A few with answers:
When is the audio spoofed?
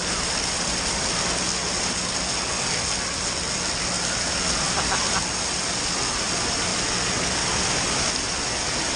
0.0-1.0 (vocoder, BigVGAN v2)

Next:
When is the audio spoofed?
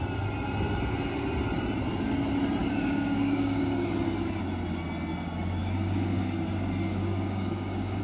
2.6-4.4 (codec, DAC); 5.6-8.0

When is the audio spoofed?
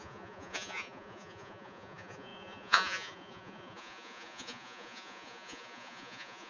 0.0-6.5 (vocoder, Vocos)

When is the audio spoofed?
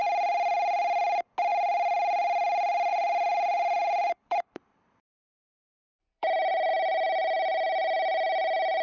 2.9-6.7 (vocoder, BigVGAN v2)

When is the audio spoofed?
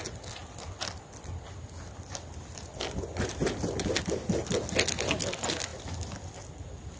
none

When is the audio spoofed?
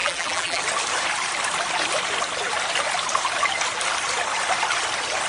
0.0-0.6 (vocoder, BigVGAN v2)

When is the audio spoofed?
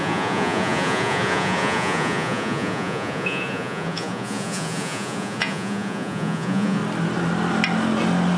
0.0-6.8 (vocoder, Vocos)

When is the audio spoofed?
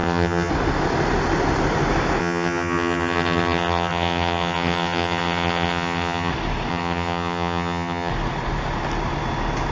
0.0-0.5 (vocoder, HiFi-GAN); 2.2-6.3; 6.7-8.1